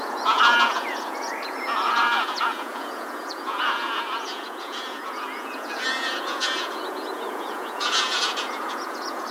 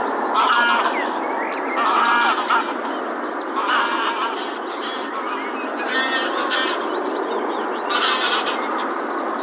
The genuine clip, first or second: second